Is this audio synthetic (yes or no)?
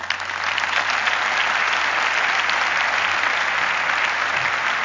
no